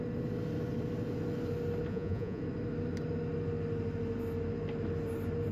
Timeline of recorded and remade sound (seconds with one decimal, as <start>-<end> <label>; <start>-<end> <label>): 0.0-1.9 recorded; 1.9-2.4 remade; 2.4-5.5 recorded